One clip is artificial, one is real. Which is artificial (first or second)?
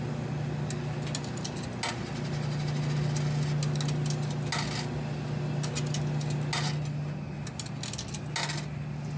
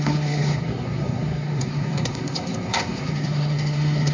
second